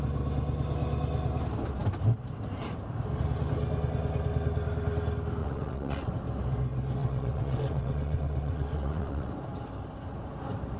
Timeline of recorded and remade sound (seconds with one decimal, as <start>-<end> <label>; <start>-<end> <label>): 0.0-5.4 recorded; 5.4-6.1 remade; 6.1-7.0 recorded; 7.0-9.3 remade; 9.3-10.8 recorded